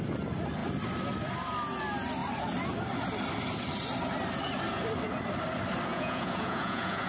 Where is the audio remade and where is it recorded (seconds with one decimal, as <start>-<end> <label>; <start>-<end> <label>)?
0.0-5.9 recorded; 5.9-7.1 remade